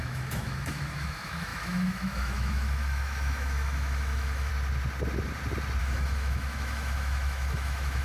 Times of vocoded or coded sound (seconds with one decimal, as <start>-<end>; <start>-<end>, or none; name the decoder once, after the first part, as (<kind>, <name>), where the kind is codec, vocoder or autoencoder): 0.0-4.5 (autoencoder, DAC-VAE); 5.8-8.0